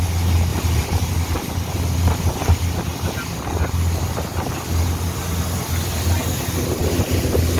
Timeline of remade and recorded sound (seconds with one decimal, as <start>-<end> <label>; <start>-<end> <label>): 0.0-0.5 recorded; 0.5-1.1 remade; 1.1-7.6 recorded